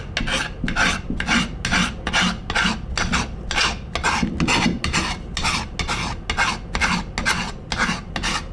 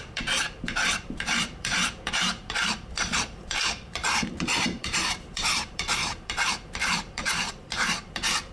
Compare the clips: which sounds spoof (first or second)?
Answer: second